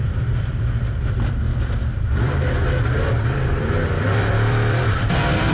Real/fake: fake